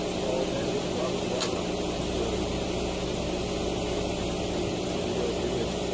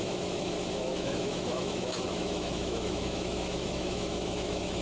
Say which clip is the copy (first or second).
second